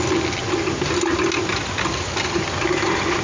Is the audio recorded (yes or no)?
yes